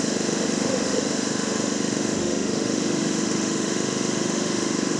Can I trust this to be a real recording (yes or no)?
no